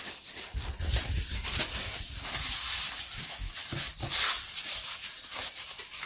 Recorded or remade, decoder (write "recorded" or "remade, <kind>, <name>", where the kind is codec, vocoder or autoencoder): recorded